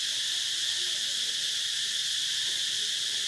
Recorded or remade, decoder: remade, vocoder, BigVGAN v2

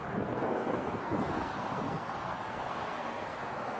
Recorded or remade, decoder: remade, codec, SNAC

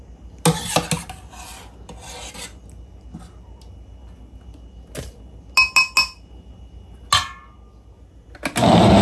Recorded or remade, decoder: recorded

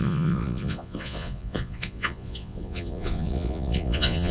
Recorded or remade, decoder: remade, vocoder, Vocos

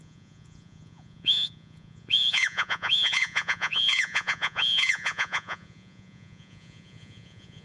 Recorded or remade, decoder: remade, vocoder, Vocos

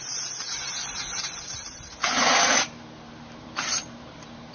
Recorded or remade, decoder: remade, vocoder, BigVGAN v2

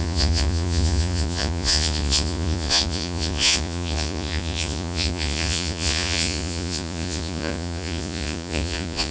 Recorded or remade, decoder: remade, vocoder, Vocos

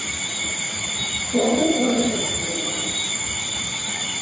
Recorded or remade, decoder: recorded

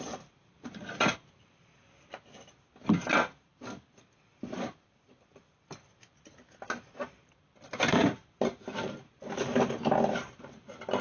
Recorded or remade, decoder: recorded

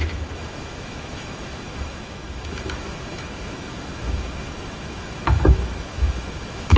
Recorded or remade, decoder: remade, autoencoder, DAC-VAE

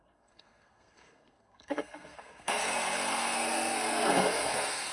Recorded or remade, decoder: remade, codec, SNAC